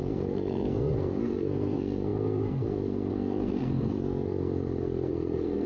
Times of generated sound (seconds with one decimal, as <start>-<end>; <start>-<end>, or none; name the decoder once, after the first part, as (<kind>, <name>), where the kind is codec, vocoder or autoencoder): 0.0-5.7 (codec, SNAC)